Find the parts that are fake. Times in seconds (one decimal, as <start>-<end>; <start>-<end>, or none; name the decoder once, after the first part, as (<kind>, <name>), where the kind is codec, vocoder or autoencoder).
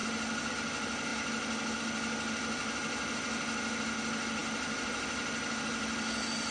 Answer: none